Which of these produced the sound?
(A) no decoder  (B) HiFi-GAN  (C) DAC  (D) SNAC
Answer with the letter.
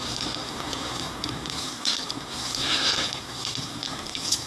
D